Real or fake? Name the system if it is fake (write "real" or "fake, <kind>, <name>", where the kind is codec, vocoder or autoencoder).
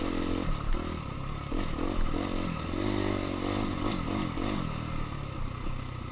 real